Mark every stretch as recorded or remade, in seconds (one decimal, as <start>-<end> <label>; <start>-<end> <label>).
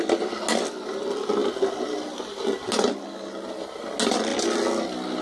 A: 0.0-5.2 recorded